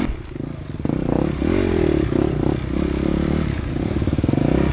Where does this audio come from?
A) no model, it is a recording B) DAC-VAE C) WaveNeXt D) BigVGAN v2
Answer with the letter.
A